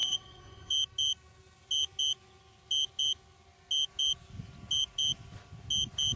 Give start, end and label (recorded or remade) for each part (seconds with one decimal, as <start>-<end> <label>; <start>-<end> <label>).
0.0-0.7 remade; 0.7-6.2 recorded